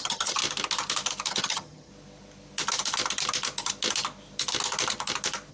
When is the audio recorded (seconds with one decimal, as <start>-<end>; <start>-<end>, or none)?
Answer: 0.4-1.3; 1.9-5.5